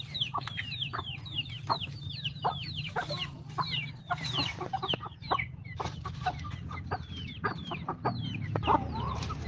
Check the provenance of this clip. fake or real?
fake